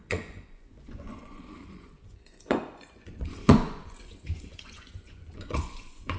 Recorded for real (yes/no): no